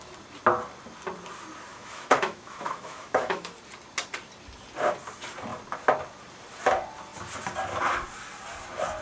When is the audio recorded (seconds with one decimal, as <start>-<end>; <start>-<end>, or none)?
0.0-1.7; 3.5-9.0